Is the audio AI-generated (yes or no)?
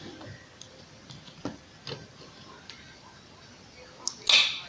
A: no